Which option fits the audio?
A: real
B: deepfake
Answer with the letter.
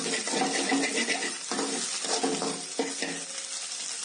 A